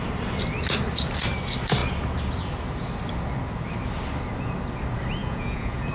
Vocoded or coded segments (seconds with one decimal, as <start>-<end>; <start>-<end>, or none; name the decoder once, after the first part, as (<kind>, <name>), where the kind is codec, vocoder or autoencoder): 5.2-5.9 (vocoder, Vocos)

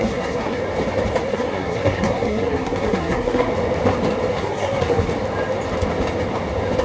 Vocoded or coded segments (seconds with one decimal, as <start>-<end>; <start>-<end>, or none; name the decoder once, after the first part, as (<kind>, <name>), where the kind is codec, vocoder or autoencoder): 0.0-0.6 (codec, SNAC); 1.3-3.5; 4.3-5.1

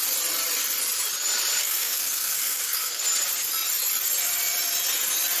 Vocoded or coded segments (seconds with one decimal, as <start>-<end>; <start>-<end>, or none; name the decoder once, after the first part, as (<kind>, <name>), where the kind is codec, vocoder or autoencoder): 1.6-3.0 (codec, SNAC)

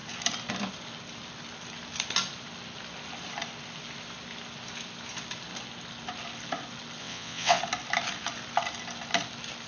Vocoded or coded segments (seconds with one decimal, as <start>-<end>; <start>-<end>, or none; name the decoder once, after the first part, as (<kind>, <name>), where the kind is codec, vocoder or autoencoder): 7.0-7.6 (vocoder, WaveNeXt)